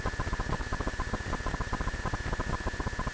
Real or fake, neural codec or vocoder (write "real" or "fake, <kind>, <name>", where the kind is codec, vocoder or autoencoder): real